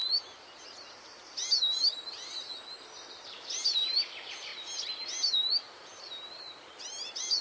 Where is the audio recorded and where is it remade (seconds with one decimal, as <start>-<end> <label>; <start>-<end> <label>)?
0.0-3.1 recorded; 3.1-4.5 remade; 4.5-5.5 recorded; 5.5-7.4 remade